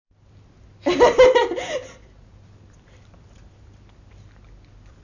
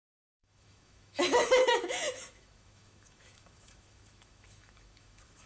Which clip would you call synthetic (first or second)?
second